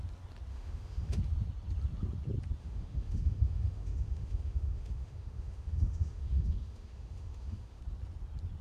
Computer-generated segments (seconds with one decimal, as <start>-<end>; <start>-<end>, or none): 0.5-1.2; 2.6-7.8